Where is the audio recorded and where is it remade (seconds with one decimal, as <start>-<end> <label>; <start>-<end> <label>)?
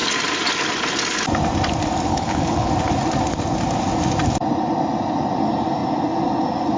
0.0-2.1 recorded; 2.1-2.7 remade; 2.7-6.8 recorded